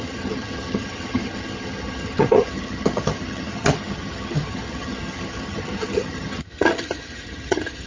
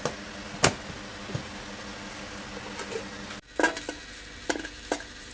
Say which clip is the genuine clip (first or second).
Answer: second